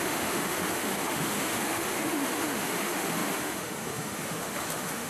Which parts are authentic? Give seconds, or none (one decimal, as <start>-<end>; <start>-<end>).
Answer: none